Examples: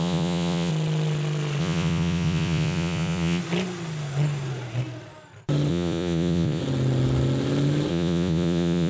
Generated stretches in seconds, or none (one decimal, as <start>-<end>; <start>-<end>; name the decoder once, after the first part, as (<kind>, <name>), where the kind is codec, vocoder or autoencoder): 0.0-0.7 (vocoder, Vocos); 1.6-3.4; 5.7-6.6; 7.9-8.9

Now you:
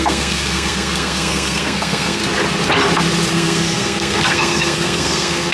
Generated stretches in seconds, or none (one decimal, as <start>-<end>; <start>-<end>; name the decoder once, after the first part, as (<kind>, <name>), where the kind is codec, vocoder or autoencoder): 0.0-2.2 (codec, SNAC); 3.3-5.5

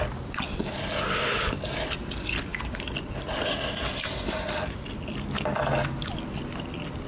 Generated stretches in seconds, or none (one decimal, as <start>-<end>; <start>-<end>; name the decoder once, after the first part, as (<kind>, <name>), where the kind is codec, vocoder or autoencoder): none